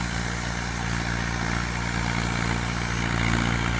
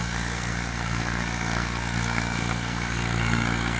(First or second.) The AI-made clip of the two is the second